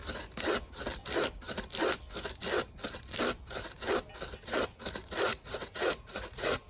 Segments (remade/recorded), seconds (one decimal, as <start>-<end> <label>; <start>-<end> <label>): 0.0-5.3 recorded; 5.3-6.7 remade